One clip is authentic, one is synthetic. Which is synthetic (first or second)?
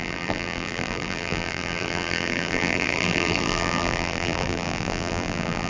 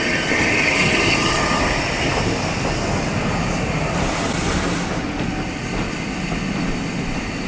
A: first